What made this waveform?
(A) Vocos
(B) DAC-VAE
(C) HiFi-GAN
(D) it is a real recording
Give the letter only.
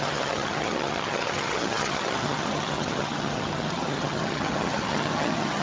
C